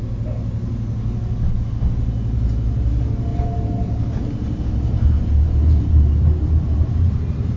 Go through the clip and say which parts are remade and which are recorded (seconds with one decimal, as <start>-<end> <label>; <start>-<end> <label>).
0.0-3.3 recorded; 3.3-7.6 remade